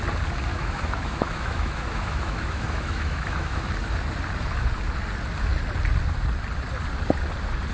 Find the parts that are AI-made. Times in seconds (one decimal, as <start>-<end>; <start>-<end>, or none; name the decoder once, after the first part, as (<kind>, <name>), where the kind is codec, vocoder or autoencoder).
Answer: 0.5-3.7 (autoencoder, DAC-VAE)